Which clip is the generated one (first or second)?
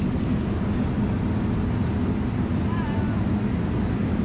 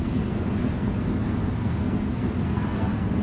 second